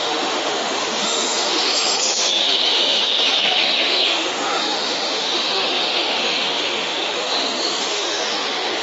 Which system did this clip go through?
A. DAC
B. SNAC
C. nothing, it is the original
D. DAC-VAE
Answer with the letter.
D